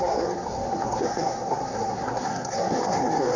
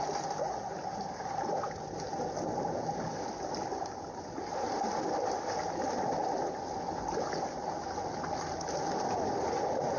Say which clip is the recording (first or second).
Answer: second